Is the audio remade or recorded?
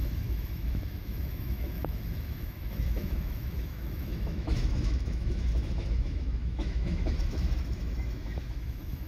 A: remade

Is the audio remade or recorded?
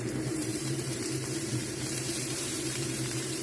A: remade